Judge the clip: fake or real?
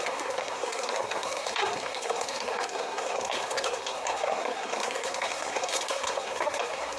fake